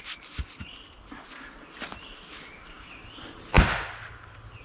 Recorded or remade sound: recorded